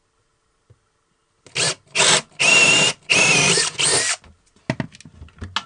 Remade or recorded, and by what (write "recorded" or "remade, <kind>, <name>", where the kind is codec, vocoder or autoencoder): recorded